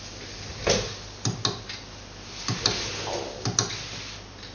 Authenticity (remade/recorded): recorded